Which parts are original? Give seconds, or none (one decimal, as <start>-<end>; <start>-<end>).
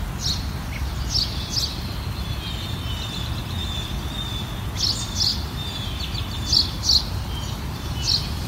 0.0-8.5